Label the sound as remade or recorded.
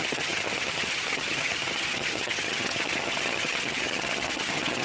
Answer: remade